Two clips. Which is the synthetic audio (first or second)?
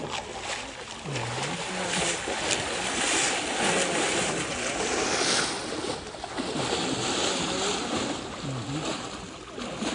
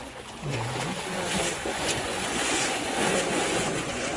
second